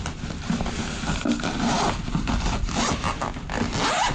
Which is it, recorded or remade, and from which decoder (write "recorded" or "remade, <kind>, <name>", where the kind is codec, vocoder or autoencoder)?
recorded